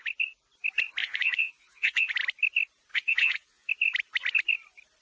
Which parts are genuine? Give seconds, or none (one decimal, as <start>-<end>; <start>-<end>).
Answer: 0.0-1.0; 2.1-2.9; 3.7-5.0